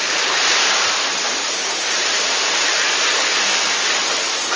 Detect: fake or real fake